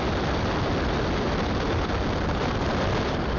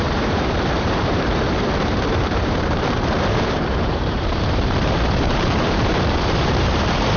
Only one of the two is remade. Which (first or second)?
second